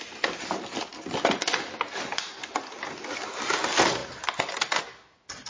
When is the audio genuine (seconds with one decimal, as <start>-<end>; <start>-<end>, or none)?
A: 0.0-5.5